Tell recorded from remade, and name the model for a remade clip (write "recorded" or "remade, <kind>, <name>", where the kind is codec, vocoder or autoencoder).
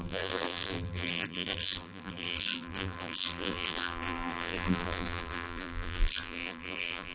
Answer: remade, vocoder, BigVGAN v2